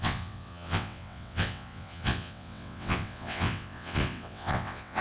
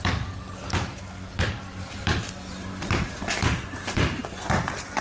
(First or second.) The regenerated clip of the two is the first